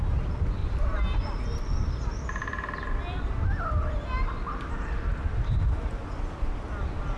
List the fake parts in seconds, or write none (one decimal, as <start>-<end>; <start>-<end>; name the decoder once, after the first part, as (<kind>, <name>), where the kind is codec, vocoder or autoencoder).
0.0-0.6 (vocoder, BigVGAN v2); 3.8-7.2

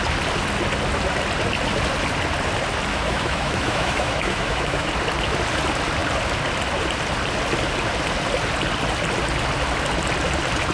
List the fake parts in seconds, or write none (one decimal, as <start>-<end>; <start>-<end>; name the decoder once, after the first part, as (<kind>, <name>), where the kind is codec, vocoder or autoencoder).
2.9-4.9 (autoencoder, DAC-VAE)